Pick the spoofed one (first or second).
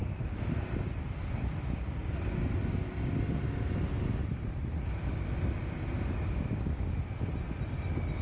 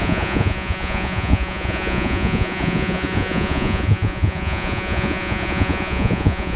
second